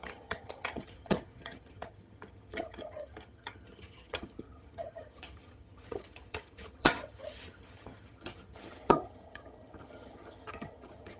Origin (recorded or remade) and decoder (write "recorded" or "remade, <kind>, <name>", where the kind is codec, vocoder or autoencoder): remade, vocoder, HiFi-GAN